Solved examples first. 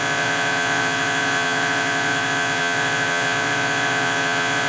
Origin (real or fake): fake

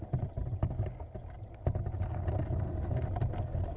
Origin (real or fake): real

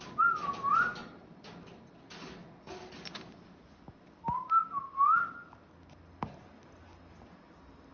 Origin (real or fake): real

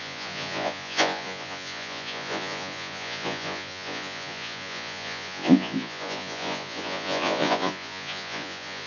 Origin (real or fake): fake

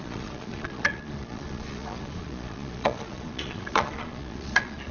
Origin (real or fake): fake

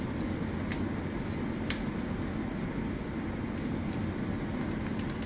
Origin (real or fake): real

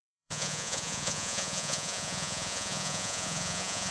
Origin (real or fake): fake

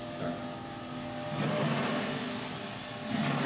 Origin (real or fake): real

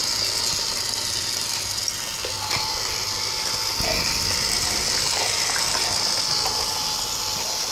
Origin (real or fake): real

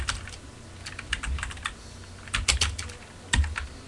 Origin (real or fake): real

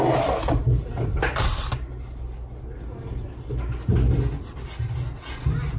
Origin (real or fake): real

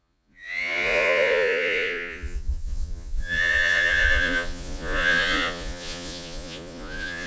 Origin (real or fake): fake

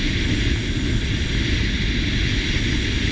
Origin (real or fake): real